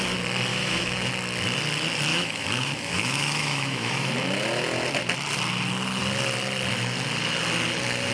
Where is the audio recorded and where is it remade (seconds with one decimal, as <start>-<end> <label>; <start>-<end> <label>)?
0.0-0.5 recorded; 0.5-1.1 remade; 1.1-2.1 recorded; 2.1-4.1 remade; 4.1-8.1 recorded